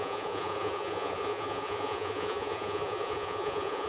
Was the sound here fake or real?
fake